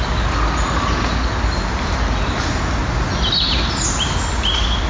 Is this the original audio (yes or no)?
yes